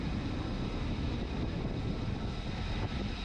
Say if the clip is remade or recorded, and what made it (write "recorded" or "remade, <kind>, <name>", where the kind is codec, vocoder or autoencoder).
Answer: recorded